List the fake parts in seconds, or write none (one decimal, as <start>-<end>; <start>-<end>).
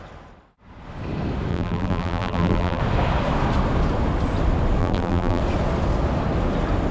1.5-2.8; 4.8-5.4